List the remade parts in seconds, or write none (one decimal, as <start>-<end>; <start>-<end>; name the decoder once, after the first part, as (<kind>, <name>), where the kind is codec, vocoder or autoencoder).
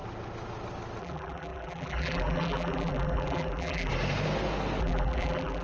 1.0-3.9 (vocoder, BigVGAN v2); 4.8-5.6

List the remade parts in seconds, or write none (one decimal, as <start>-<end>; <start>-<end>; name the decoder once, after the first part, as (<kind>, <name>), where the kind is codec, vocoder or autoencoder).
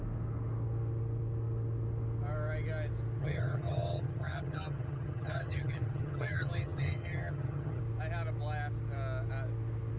3.2-7.8 (vocoder, HiFi-GAN)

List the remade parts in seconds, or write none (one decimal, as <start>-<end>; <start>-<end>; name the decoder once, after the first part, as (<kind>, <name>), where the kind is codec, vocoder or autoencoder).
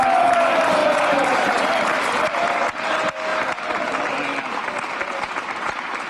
none